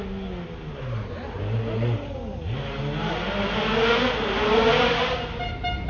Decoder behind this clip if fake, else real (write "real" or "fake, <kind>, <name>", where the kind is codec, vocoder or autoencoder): real